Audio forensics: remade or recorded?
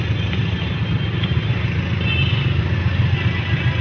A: recorded